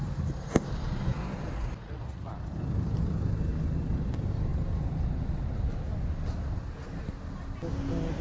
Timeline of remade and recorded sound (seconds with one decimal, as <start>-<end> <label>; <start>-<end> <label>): 0.0-1.8 recorded; 1.8-2.3 remade; 2.3-8.2 recorded